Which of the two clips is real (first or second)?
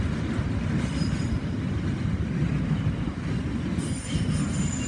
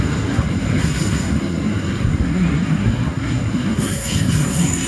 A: first